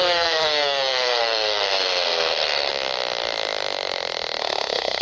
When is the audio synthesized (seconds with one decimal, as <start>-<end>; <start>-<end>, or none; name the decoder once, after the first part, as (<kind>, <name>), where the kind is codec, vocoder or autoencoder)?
0.0-2.7 (codec, SNAC); 4.4-5.0